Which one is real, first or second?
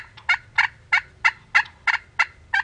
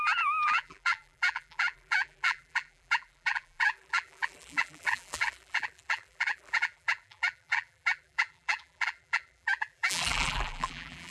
first